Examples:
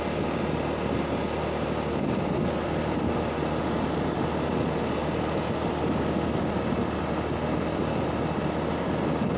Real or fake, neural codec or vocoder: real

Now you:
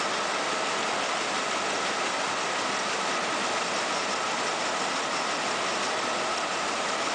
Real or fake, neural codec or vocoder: real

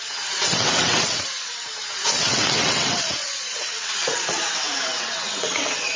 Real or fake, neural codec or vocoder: fake, vocoder, WaveNeXt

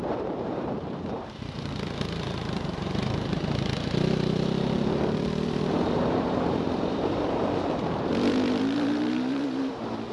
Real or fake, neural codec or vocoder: fake, vocoder, BigVGAN v2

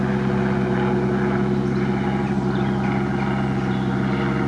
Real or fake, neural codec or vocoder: real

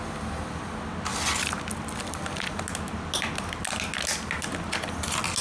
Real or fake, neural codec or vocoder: real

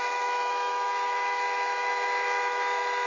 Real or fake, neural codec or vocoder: fake, autoencoder, DAC-VAE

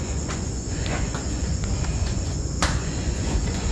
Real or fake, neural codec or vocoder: fake, vocoder, Vocos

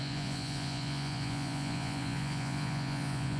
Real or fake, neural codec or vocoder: fake, vocoder, Vocos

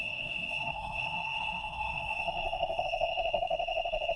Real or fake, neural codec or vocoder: fake, codec, SNAC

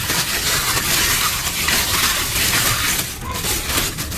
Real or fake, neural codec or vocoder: real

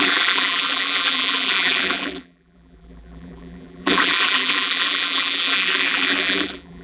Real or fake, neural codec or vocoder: fake, vocoder, BigVGAN v2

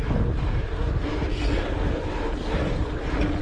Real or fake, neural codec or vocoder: real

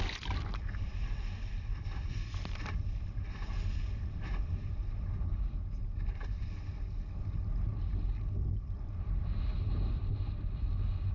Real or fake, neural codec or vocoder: real